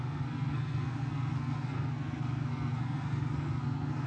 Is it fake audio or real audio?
fake